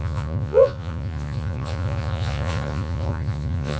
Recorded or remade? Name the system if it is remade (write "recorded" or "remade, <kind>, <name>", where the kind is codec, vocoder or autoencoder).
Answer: remade, vocoder, Vocos